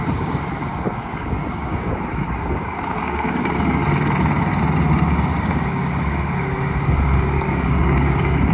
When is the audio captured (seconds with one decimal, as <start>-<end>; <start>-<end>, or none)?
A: 3.8-5.4